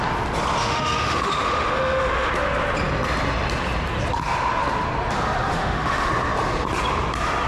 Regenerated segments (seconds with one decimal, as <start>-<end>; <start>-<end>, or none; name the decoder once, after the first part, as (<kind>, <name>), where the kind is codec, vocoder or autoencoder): 0.6-2.3 (autoencoder, DAC-VAE); 5.5-6.1